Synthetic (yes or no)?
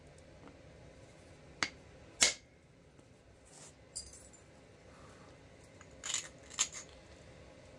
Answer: no